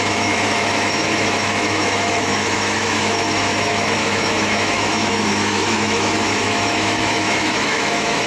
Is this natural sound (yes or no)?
no